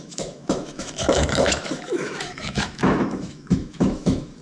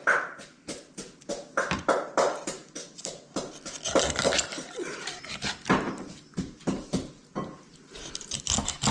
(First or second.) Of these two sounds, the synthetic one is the first